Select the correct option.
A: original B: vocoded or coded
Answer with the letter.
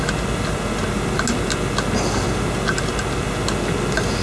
A